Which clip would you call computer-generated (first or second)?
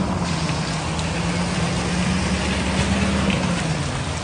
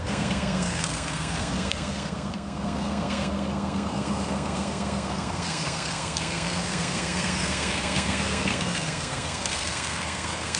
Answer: second